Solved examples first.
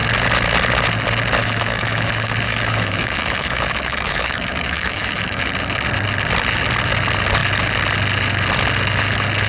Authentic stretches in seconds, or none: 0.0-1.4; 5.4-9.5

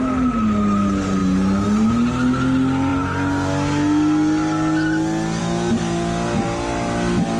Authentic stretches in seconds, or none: 0.0-7.4

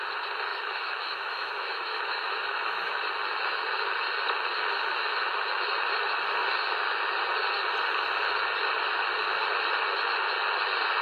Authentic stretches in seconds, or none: 0.0-0.5; 2.9-11.0

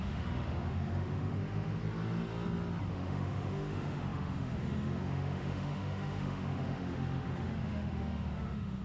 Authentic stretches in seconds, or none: 1.8-2.9

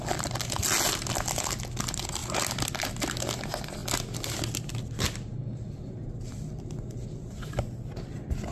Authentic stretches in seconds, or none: 0.0-8.5

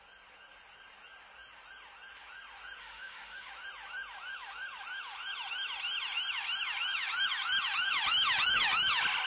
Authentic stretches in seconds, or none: 0.0-2.8; 3.5-9.3

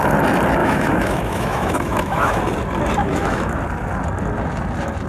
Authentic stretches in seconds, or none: 0.0-0.6; 2.4-3.0; 3.6-5.1